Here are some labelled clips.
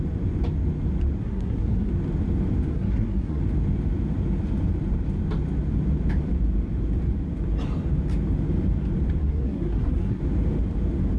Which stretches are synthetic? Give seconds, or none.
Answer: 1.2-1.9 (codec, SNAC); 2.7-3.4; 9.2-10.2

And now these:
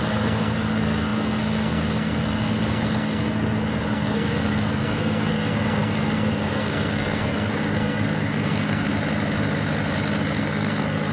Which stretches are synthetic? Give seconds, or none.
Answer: 0.0-8.9 (codec, SNAC); 10.4-11.1

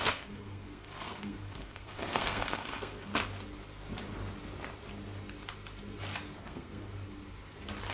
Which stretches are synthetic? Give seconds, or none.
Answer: 0.0-3.1 (codec, SNAC); 6.4-6.9

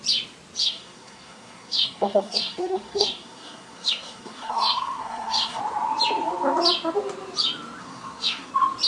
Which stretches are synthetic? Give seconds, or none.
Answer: 0.6-5.6 (codec, SNAC); 7.8-8.5

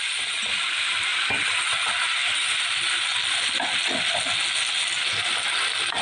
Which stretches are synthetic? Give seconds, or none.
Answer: none